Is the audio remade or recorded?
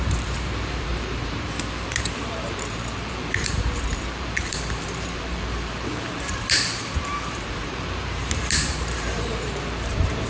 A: remade